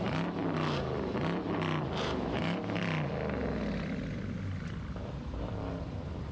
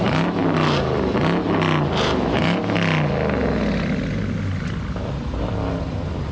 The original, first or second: second